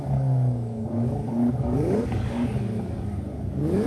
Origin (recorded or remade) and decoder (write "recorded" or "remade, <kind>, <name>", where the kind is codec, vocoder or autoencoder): remade, codec, DAC